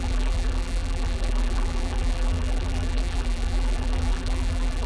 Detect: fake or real fake